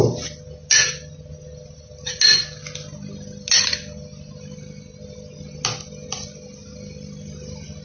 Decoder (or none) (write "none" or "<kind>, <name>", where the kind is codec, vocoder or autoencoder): none